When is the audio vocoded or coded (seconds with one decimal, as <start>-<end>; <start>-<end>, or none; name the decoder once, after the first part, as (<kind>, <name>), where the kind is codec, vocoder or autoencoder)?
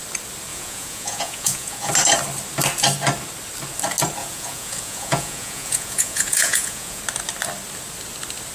0.5-1.9 (vocoder, Vocos); 4.2-7.0